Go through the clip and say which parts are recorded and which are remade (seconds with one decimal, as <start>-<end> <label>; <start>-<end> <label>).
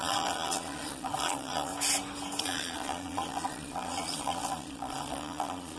0.0-1.7 remade; 1.7-2.4 recorded; 2.4-5.8 remade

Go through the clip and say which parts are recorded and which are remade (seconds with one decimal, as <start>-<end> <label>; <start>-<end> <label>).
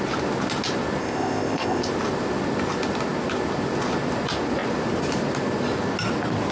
0.0-1.0 recorded; 1.0-1.8 remade; 1.8-6.5 recorded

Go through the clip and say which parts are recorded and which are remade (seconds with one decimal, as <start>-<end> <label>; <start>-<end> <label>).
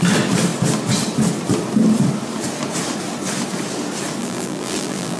0.0-4.2 recorded; 4.2-5.2 remade